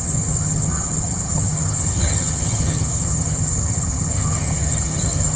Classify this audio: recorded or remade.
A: remade